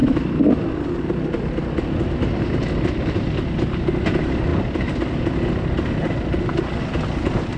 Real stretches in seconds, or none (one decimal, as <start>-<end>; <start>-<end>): 0.0-7.6